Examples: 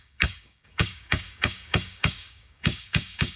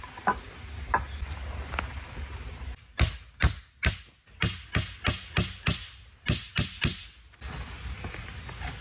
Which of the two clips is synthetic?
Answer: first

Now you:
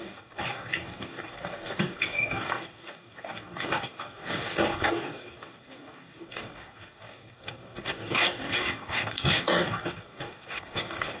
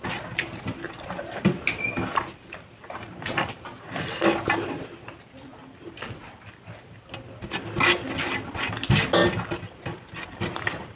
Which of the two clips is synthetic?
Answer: first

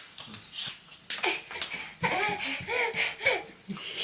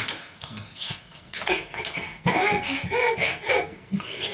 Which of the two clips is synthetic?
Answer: second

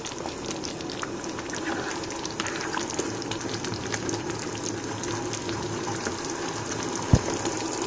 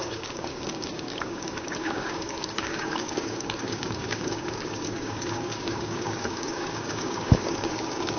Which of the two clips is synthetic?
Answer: second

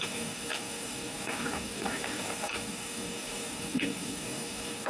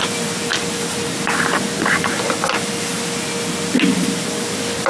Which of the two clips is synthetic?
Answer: first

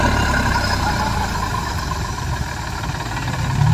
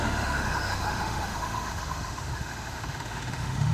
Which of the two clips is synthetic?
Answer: second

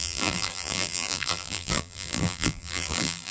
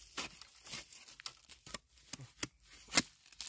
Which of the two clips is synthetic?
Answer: first